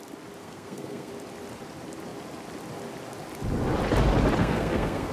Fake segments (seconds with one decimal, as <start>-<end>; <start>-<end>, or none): 0.4-1.1; 4.4-5.1